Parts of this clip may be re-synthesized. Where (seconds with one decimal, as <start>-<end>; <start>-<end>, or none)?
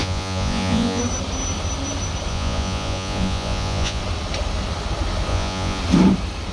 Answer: 0.0-1.0; 2.3-4.0; 5.3-5.8